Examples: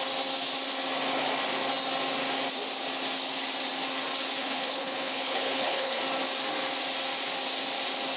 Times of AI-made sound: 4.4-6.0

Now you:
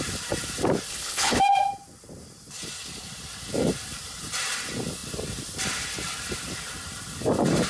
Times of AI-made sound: 0.9-1.4